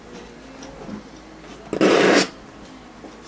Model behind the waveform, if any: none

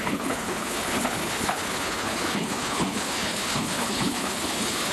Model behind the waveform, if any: codec, HILCodec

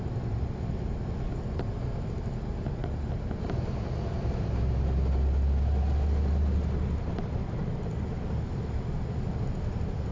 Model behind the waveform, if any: none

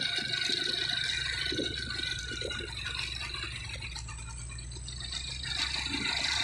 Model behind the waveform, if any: none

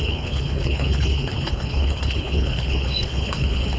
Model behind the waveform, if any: codec, HILCodec